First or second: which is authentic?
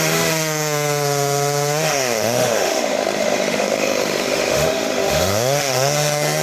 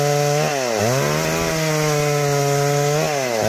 second